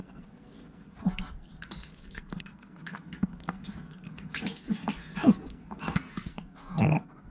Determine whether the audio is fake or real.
fake